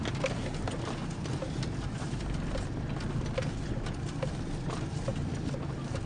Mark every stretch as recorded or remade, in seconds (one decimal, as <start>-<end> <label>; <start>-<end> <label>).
0.0-6.1 recorded